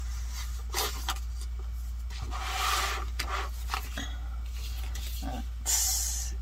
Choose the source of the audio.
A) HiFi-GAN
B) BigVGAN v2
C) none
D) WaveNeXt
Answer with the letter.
C